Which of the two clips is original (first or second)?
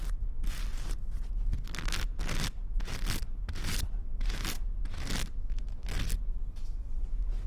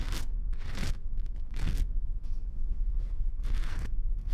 first